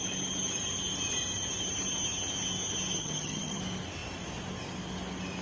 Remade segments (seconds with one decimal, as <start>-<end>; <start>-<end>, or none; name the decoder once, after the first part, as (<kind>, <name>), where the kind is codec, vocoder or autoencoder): 3.0-3.6 (vocoder, HiFi-GAN)

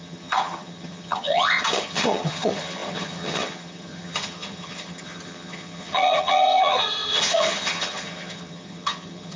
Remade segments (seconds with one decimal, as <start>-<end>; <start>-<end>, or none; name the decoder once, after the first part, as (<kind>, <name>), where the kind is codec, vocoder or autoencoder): 0.0-9.4 (vocoder, HiFi-GAN)

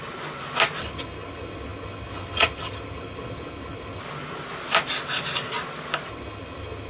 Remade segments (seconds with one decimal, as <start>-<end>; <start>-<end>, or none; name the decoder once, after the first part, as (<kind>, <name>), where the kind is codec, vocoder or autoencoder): 0.8-4.0 (vocoder, HiFi-GAN); 6.1-6.9

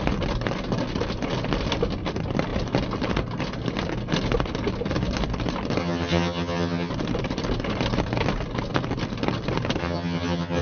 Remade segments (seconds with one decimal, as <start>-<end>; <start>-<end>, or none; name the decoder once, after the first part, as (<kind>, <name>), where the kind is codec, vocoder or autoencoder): 5.8-6.9 (vocoder, HiFi-GAN); 9.8-10.6

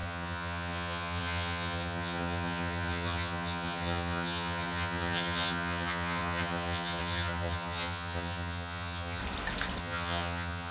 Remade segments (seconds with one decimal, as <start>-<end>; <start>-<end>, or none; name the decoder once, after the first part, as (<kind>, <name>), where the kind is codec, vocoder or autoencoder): 0.0-9.2 (vocoder, HiFi-GAN); 9.8-10.7

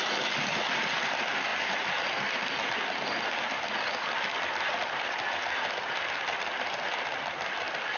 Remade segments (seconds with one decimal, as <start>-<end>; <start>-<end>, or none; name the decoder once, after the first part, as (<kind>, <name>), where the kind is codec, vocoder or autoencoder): none

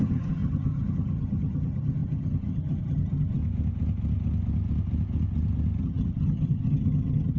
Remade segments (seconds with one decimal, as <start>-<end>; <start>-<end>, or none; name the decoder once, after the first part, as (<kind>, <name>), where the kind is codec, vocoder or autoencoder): 0.0-3.4 (vocoder, HiFi-GAN); 5.8-7.4

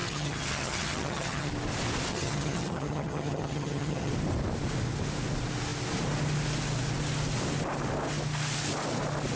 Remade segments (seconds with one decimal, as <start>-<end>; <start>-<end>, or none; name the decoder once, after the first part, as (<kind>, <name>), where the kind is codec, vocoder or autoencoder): 0.0-1.5 (vocoder, HiFi-GAN); 2.1-4.1